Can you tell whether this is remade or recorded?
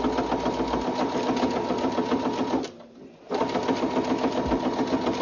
recorded